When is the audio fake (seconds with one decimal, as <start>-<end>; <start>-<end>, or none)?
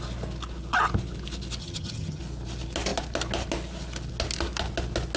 1.6-2.2